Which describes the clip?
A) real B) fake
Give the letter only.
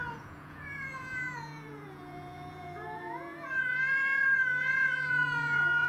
B